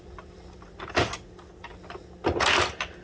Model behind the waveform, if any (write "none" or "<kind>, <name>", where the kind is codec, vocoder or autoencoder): none